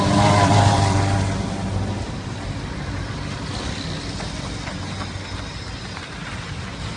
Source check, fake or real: real